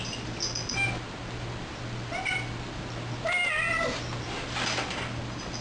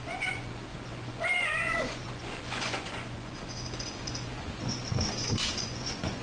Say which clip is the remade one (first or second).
second